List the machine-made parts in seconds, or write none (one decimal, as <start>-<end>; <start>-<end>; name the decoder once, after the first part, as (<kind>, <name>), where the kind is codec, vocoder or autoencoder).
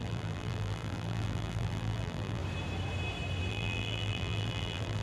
0.0-2.4 (vocoder, BigVGAN v2); 3.5-5.0